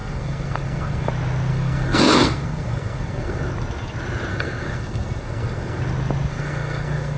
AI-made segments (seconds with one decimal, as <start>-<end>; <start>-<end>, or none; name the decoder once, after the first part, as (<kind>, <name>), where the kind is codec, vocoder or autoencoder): 0.0-1.1 (codec, SNAC); 1.5-3.5; 4.3-5.8; 6.3-7.2